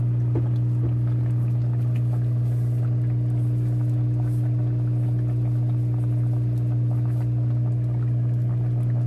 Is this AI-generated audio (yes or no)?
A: no